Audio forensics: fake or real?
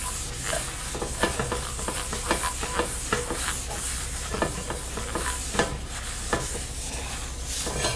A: real